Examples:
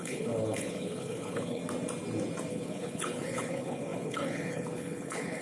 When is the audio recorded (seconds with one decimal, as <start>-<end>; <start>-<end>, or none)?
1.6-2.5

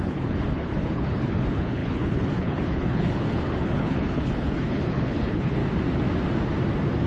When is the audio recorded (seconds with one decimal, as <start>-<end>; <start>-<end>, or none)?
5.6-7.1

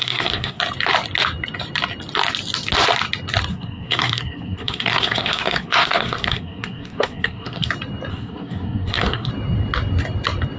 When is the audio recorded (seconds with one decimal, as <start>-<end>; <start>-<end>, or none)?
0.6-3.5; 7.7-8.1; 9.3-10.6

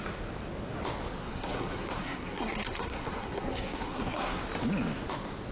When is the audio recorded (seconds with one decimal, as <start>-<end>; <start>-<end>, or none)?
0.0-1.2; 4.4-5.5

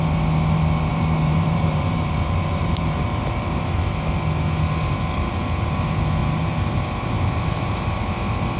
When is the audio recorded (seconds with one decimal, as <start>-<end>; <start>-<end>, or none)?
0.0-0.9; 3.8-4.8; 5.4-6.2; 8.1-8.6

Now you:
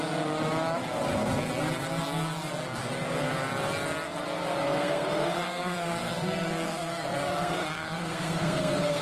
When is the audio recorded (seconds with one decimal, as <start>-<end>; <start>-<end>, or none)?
0.0-4.6